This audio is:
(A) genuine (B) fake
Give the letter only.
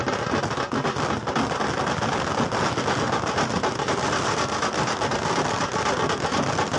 A